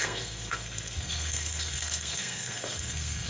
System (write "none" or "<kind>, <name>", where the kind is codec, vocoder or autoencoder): codec, SNAC